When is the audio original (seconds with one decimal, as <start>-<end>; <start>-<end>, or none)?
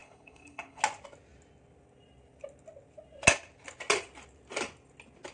0.8-5.3